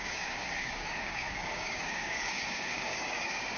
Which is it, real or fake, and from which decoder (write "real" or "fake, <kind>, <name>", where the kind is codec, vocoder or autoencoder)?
fake, codec, DAC